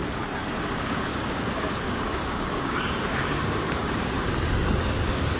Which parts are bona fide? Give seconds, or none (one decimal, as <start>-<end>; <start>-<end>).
0.0-0.6